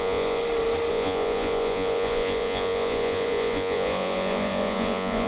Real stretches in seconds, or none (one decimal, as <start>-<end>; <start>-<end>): 0.4-0.9